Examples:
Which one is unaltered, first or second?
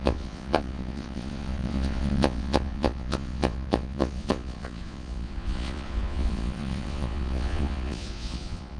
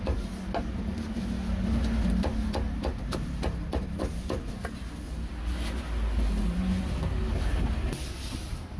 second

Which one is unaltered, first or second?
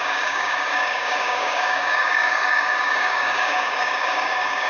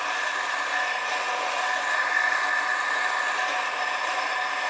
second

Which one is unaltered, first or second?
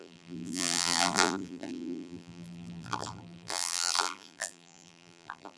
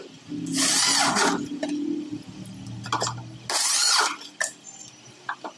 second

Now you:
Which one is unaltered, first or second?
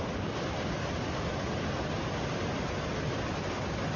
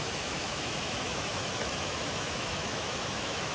first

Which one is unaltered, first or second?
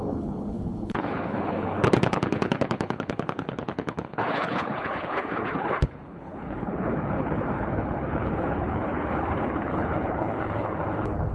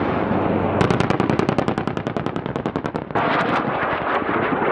second